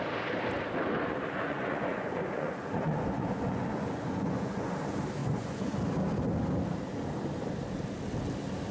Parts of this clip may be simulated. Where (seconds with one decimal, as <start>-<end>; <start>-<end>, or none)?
1.1-4.7; 5.2-5.7